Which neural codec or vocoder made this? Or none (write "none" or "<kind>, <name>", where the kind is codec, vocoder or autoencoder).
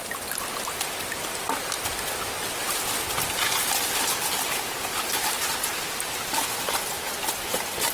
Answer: none